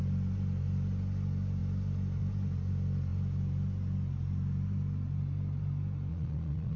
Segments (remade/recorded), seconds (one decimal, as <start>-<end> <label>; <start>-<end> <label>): 0.0-6.1 recorded; 6.1-6.8 remade